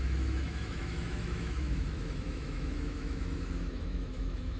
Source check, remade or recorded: remade